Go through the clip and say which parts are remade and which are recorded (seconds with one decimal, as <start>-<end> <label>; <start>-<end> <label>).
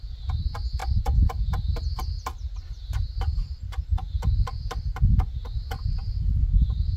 0.0-0.8 recorded; 0.8-5.0 remade; 5.0-7.0 recorded